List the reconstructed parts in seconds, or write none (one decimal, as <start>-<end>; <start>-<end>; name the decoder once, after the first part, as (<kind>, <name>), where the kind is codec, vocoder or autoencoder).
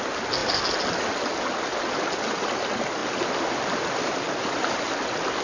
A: none